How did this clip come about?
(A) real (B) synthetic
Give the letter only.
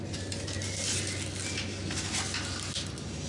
A